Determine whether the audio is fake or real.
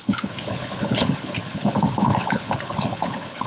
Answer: fake